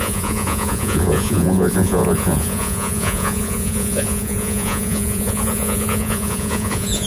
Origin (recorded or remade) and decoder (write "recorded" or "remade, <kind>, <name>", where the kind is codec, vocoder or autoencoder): remade, vocoder, Vocos